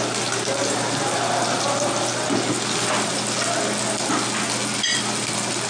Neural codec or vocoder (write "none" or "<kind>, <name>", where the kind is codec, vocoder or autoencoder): none